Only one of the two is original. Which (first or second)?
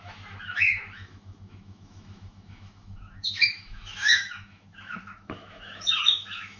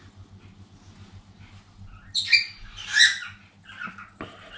second